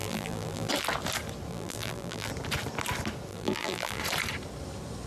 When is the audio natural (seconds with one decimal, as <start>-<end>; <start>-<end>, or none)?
0.7-1.5; 2.3-3.3; 4.0-5.1